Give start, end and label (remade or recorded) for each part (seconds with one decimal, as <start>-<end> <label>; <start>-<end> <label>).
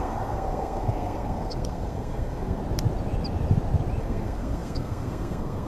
0.0-2.6 remade; 2.6-4.0 recorded; 4.0-5.7 remade